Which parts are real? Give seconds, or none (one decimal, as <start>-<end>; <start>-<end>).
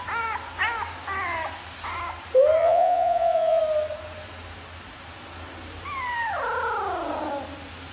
0.0-2.6; 3.6-7.9